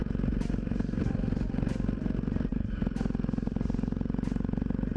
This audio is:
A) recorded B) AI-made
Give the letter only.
A